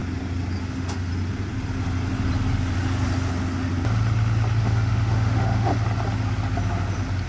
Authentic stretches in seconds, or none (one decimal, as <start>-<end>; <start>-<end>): 0.0-0.6; 1.1-4.6; 5.7-7.3

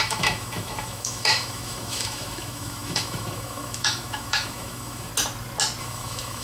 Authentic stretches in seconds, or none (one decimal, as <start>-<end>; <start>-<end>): 5.1-5.8

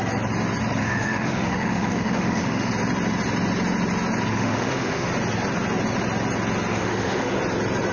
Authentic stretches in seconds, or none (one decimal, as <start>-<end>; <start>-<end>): 0.0-0.8; 2.7-4.3; 5.1-6.7; 7.4-7.9

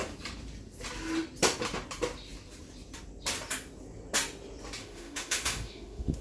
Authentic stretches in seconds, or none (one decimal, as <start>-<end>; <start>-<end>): 0.0-4.8